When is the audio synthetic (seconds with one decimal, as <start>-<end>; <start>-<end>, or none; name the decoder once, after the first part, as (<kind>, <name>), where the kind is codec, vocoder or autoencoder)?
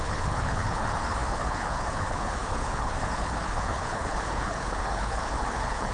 0.0-5.9 (codec, HILCodec)